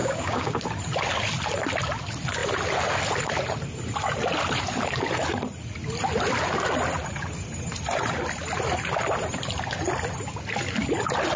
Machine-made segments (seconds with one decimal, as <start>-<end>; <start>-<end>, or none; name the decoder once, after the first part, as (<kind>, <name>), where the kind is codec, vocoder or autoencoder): 0.0-0.6 (codec, DAC)